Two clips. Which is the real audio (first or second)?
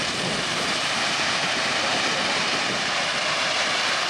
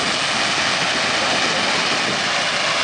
second